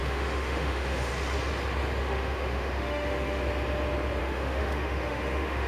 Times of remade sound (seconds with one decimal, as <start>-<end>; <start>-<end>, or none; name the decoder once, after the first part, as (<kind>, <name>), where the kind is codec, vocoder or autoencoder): 0.0-1.1 (autoencoder, DAC-VAE); 2.0-3.4; 4.2-5.7